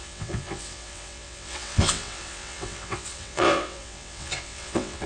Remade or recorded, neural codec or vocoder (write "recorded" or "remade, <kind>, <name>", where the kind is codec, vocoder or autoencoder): remade, vocoder, WaveNeXt